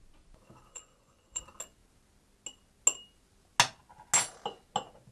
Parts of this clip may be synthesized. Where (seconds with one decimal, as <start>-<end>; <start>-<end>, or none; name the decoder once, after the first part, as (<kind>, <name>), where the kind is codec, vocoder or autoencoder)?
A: 0.7-1.4 (vocoder, Vocos)